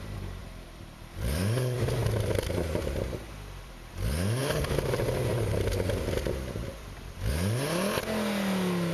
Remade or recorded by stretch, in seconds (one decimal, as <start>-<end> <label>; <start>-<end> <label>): 0.0-0.4 recorded; 0.4-3.9 remade; 3.9-4.4 recorded; 4.4-7.3 remade; 7.3-8.9 recorded